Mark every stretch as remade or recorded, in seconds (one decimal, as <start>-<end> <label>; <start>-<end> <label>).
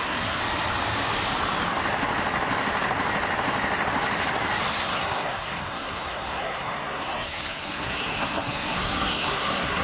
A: 0.0-0.4 remade; 0.4-4.6 recorded; 4.6-9.8 remade